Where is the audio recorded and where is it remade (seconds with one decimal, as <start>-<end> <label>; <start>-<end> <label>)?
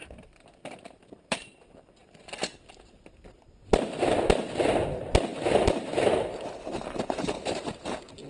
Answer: 0.0-1.6 remade; 1.6-5.3 recorded; 5.3-7.8 remade; 7.8-8.3 recorded